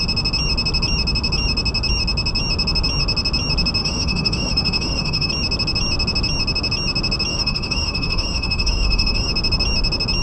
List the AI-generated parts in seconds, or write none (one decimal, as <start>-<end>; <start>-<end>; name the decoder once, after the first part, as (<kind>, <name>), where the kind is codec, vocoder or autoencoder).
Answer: 3.8-5.3 (autoencoder, DAC-VAE); 7.3-9.3